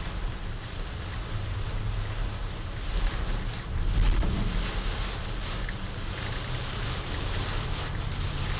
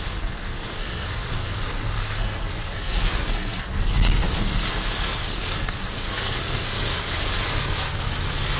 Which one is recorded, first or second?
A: first